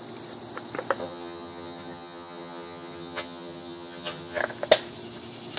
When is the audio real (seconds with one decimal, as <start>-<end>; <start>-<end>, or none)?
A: 0.0-1.0; 4.4-5.6